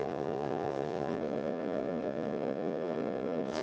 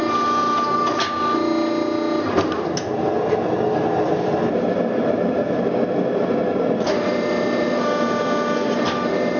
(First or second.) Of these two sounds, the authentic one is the second